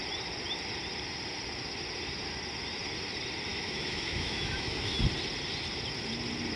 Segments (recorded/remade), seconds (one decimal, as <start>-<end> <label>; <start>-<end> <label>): 0.0-3.5 recorded; 3.5-5.0 remade; 5.0-6.6 recorded